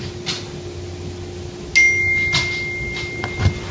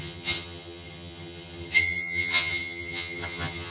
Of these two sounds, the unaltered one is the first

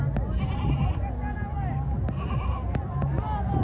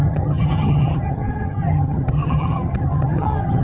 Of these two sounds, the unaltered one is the first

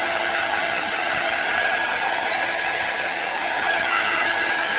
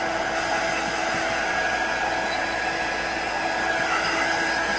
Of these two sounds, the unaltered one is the second